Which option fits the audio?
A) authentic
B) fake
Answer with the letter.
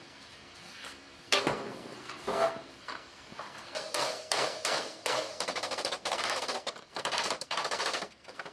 B